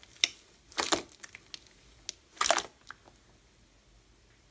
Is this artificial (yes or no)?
no